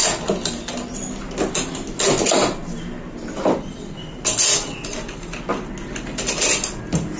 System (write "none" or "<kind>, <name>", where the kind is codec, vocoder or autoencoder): none